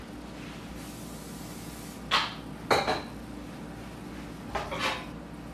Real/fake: real